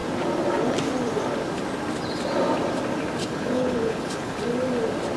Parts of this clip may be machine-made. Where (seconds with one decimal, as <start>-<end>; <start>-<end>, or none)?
3.2-4.4